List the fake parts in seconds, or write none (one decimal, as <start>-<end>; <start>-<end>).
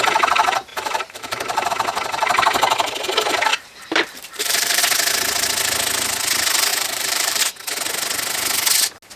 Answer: 0.7-1.7; 3.5-4.8; 6.7-7.4